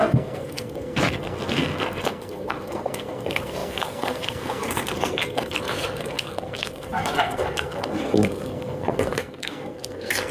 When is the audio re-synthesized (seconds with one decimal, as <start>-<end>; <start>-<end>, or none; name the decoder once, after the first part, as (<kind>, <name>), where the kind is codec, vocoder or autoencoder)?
0.0-10.3 (codec, SNAC)